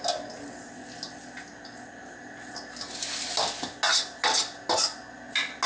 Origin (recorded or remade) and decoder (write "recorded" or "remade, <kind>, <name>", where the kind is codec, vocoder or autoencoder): recorded